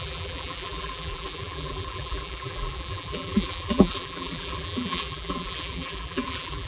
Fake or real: fake